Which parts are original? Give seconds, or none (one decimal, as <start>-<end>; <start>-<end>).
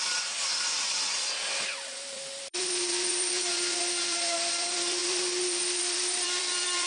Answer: 3.5-4.0